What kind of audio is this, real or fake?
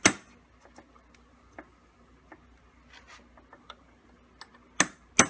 real